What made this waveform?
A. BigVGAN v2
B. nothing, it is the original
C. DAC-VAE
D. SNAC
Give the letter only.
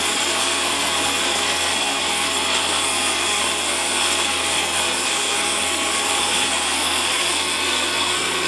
D